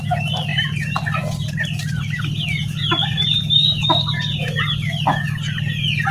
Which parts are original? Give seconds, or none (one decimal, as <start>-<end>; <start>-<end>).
0.0-0.5; 4.2-6.1